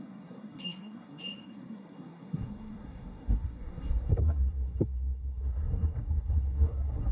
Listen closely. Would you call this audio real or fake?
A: fake